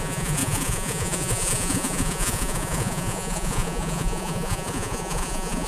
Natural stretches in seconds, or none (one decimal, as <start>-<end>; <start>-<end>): none